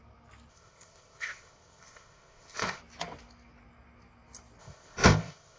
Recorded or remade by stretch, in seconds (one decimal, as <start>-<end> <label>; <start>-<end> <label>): 0.0-0.5 recorded; 0.5-2.8 remade; 2.8-4.6 recorded; 4.6-5.6 remade